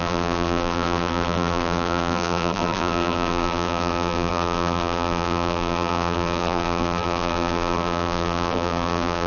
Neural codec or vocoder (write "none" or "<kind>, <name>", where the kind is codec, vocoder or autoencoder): vocoder, BigVGAN v2